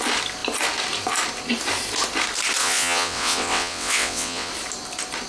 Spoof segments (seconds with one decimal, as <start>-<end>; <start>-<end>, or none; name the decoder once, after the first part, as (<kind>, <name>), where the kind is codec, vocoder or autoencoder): 2.6-4.5 (vocoder, WaveNeXt)